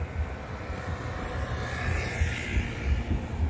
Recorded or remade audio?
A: recorded